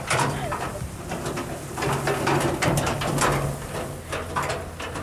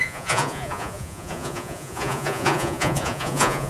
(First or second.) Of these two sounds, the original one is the first